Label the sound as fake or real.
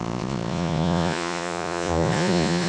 fake